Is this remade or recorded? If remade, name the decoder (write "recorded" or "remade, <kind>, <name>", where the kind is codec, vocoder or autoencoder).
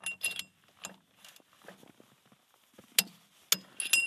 recorded